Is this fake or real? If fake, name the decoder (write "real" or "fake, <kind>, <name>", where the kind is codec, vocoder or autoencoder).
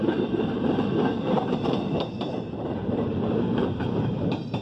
fake, vocoder, BigVGAN v2